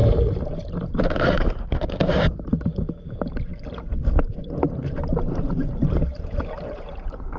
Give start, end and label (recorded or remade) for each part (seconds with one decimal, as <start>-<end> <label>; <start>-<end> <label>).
0.0-3.5 remade; 3.5-4.4 recorded; 4.4-7.4 remade